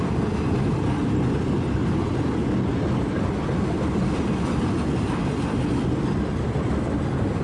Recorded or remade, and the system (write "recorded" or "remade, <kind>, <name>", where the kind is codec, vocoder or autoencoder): recorded